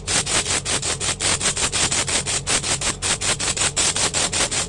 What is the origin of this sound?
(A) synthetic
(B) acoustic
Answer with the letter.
B